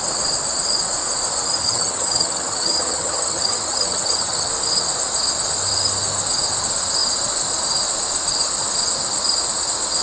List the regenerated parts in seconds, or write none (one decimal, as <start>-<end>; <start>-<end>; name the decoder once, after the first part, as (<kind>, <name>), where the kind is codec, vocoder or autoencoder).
1.6-4.5 (vocoder, HiFi-GAN)